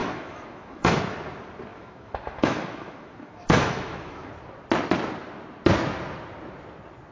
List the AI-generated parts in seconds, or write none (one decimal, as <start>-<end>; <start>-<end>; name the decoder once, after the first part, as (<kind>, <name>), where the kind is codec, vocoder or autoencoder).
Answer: 0.0-1.0 (autoencoder, DAC-VAE); 1.7-4.3